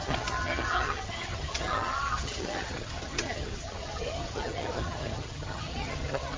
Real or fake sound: fake